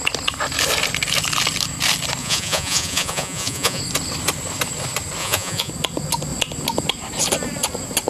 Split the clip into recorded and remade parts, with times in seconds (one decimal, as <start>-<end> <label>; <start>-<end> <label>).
0.0-2.2 recorded; 2.2-3.8 remade; 3.8-5.2 recorded; 5.2-5.7 remade; 5.7-8.1 recorded